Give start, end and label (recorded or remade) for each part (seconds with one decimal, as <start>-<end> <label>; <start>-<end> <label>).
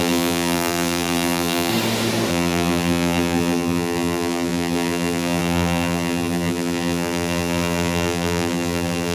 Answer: 0.0-1.7 remade; 1.7-2.3 recorded; 2.3-9.1 remade